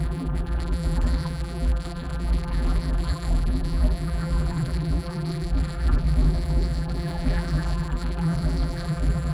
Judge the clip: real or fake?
fake